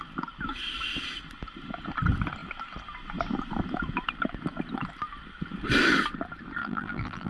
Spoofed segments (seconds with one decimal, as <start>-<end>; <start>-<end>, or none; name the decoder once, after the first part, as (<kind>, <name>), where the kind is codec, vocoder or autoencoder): 6.6-7.3 (vocoder, BigVGAN v2)